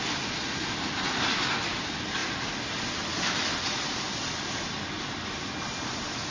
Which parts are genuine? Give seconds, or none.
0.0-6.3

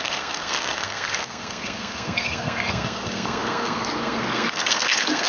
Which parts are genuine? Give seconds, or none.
none

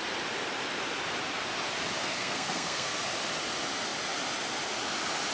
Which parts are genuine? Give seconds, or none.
0.0-2.0; 3.0-5.3

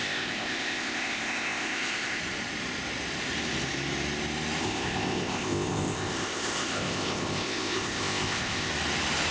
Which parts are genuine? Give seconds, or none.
2.2-4.6; 8.7-9.3

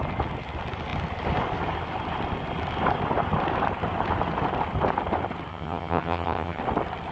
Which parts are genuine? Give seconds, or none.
0.0-5.5; 6.6-7.1

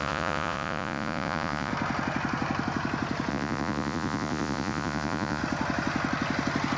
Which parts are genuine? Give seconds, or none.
1.7-3.3; 5.4-6.8

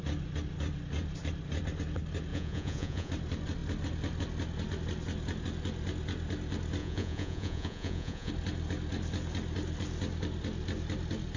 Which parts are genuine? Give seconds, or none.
0.0-2.3; 3.1-6.8; 8.3-11.4

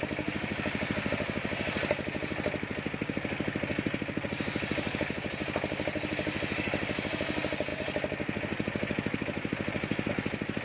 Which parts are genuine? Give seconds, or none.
0.0-10.6